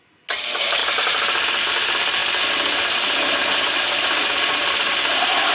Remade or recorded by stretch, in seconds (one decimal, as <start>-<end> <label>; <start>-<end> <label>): 0.0-5.5 recorded

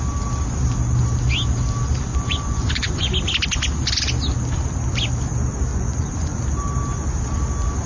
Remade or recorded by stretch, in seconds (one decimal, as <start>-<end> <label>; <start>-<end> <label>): 0.0-2.1 recorded; 2.1-3.1 remade; 3.1-5.7 recorded; 5.7-6.4 remade; 6.4-7.9 recorded

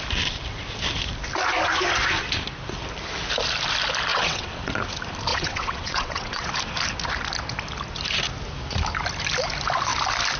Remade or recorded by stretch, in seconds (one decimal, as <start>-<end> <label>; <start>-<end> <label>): 0.0-4.1 recorded; 4.1-4.7 remade; 4.7-5.3 recorded; 5.3-6.5 remade; 6.5-10.4 recorded